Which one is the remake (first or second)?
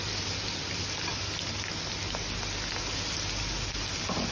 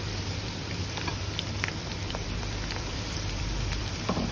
second